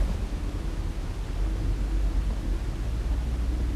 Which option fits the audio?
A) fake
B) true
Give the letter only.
B